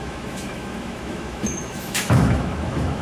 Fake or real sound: fake